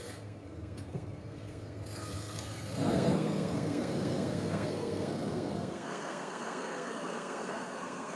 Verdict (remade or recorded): remade